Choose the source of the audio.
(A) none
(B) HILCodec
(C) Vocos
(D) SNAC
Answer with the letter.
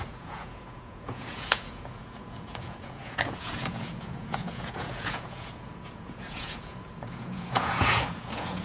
C